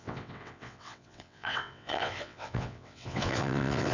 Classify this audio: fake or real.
fake